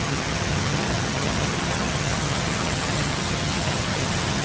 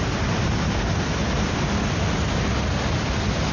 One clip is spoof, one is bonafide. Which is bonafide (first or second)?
second